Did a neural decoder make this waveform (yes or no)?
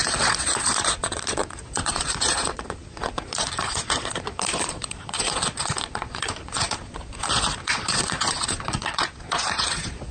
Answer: yes